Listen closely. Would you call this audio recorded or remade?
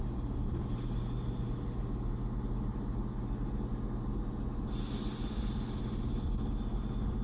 recorded